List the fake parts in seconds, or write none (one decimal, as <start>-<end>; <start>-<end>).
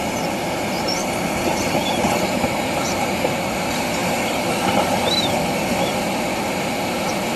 0.0-4.0; 5.8-7.4